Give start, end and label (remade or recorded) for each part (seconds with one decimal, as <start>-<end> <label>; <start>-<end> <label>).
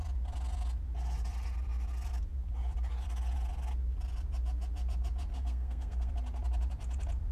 0.0-5.3 recorded; 5.3-6.1 remade; 6.1-7.3 recorded